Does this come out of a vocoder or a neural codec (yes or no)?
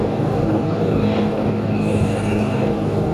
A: yes